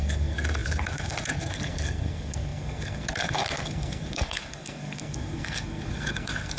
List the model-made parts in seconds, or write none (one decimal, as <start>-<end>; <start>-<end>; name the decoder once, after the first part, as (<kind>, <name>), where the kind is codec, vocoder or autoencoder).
0.0-6.6 (codec, SNAC)